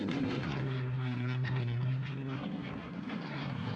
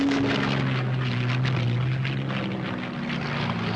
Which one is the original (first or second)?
second